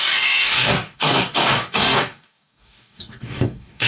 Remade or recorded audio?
remade